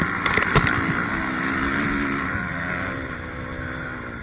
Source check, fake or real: real